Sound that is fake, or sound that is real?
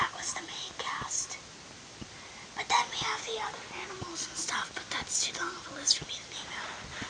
real